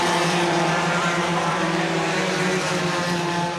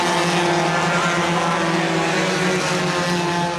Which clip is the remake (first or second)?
first